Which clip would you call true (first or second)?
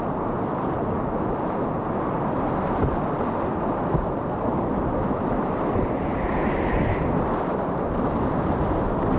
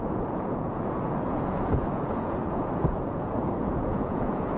first